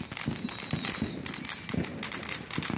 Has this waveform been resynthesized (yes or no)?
no